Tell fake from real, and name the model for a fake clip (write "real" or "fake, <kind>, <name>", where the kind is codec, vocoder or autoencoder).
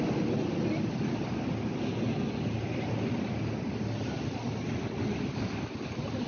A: real